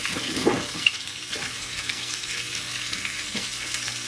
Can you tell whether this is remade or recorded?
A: remade